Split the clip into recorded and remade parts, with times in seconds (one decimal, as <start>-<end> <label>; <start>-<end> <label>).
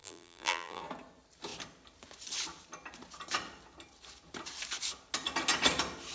0.0-0.8 remade; 0.8-6.1 recorded